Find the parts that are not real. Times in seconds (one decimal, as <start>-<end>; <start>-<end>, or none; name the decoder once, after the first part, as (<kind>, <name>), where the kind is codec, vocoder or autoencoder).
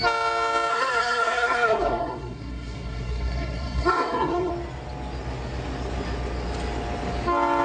0.7-4.5 (codec, SNAC)